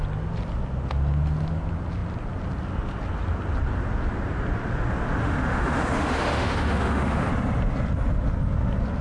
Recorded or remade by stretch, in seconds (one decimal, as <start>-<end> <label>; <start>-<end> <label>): 0.0-5.2 recorded; 5.2-7.3 remade; 7.3-9.0 recorded